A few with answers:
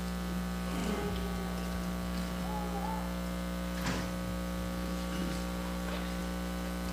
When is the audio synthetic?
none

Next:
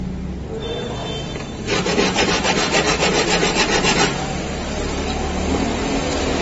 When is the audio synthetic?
none

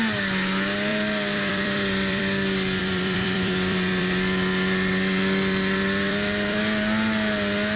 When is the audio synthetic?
0.9-2.2 (vocoder, BigVGAN v2); 2.8-6.6